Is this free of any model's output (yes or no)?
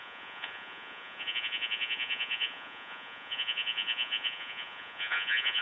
no